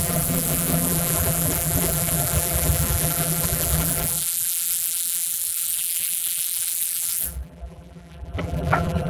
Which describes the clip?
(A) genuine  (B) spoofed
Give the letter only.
B